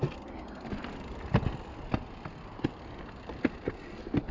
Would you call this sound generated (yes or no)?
no